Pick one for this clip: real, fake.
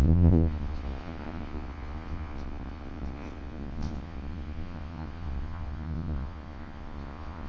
fake